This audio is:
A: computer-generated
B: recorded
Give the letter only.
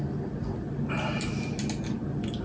B